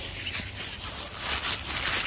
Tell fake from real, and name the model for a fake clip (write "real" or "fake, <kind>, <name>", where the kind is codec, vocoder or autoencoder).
real